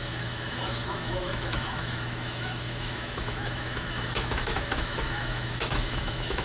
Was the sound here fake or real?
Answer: fake